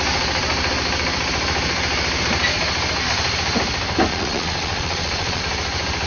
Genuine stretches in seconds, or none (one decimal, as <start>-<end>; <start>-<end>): 0.0-4.1; 5.4-6.1